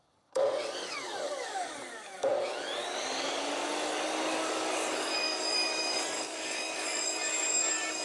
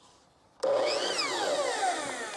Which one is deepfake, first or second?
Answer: first